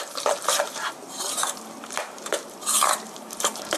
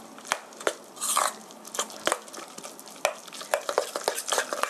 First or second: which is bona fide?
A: second